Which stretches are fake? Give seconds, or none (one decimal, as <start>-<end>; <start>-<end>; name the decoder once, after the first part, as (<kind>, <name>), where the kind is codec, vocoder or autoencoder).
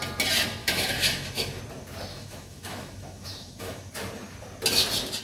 0.6-1.6 (autoencoder, DAC-VAE); 2.1-3.9